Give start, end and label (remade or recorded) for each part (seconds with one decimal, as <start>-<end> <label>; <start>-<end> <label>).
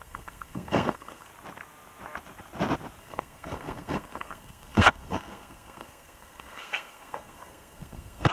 0.0-1.3 remade; 1.3-3.0 recorded; 3.0-8.3 remade